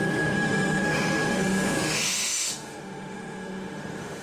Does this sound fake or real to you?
fake